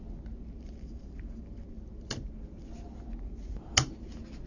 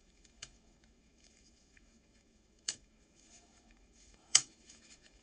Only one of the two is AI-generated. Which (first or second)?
second